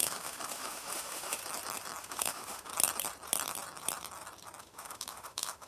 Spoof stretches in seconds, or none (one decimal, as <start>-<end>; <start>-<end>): 0.0-1.4; 2.0-2.7; 4.6-5.7